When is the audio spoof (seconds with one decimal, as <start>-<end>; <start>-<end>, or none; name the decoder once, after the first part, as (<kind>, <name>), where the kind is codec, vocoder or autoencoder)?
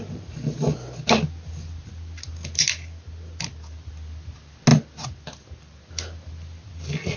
none